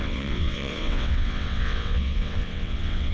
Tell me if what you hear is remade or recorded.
remade